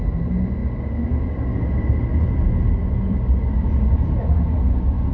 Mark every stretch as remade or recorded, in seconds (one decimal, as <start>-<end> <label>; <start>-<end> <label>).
0.0-5.1 recorded